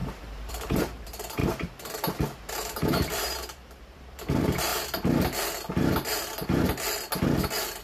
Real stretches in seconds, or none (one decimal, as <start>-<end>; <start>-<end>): 4.7-7.8